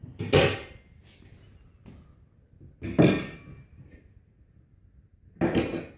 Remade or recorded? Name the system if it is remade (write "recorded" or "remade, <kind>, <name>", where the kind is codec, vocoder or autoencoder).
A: recorded